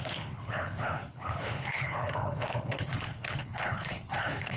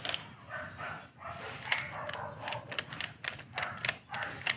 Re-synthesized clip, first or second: first